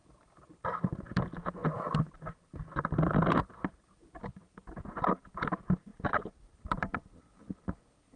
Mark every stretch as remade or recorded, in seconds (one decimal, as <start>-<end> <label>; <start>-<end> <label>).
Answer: 0.0-8.2 recorded